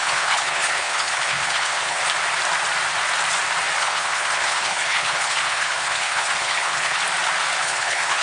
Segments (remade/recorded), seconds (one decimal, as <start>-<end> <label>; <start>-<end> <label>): 0.0-2.0 remade; 2.0-3.8 recorded; 3.8-7.0 remade; 7.0-7.6 recorded; 7.6-8.2 remade